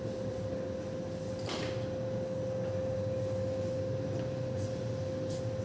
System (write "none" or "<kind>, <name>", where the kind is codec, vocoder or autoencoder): none